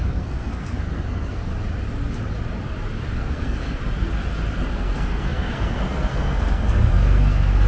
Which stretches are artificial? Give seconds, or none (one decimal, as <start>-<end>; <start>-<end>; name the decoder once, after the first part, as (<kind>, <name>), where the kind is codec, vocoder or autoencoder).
0.0-1.5 (codec, SNAC); 3.0-3.8; 4.7-7.7